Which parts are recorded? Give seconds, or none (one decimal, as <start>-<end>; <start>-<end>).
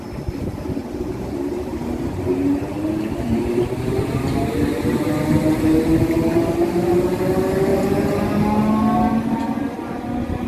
0.0-0.8; 5.0-10.5